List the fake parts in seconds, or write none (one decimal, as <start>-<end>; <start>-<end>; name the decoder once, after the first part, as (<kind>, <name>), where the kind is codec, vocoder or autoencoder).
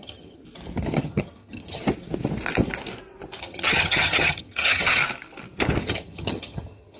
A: 0.0-0.4 (vocoder, HiFi-GAN); 0.9-1.8; 3.4-5.0; 5.8-7.0